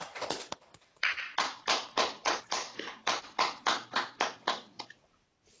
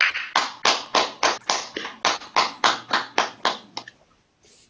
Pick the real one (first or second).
second